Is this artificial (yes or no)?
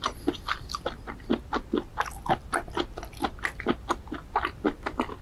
no